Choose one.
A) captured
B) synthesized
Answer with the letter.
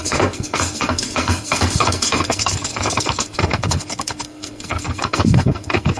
B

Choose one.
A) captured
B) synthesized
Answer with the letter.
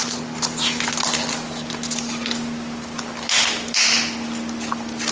A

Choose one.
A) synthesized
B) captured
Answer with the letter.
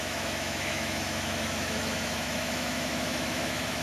A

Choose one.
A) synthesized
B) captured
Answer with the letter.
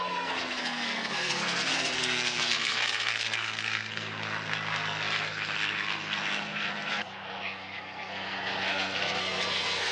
A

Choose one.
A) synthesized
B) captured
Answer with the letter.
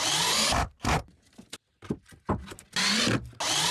B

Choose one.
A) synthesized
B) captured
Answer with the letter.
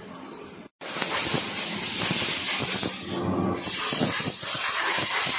B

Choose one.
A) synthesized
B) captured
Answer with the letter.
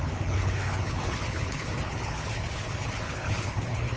A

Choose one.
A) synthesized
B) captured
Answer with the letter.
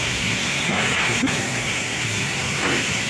A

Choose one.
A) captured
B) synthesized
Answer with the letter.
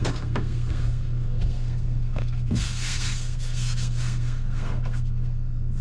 B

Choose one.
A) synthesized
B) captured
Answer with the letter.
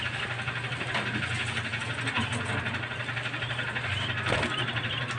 B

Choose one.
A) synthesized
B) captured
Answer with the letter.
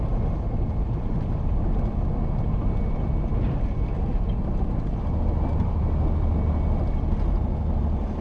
B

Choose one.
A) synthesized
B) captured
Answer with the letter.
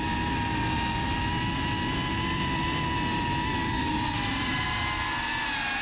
B